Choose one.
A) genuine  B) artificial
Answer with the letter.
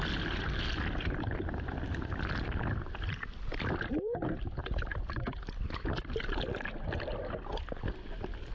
A